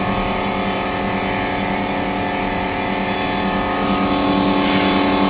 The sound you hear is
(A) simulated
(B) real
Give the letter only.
B